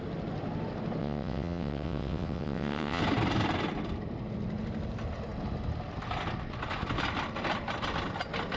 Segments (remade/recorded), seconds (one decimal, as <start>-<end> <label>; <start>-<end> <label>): 0.0-1.0 recorded; 1.0-3.0 remade; 3.0-8.6 recorded